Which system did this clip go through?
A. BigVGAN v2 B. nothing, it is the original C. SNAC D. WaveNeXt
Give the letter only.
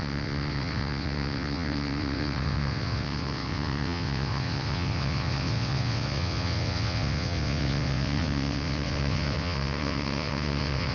D